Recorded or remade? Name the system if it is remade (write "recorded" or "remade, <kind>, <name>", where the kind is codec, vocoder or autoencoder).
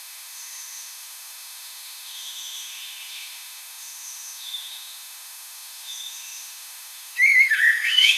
remade, autoencoder, DAC-VAE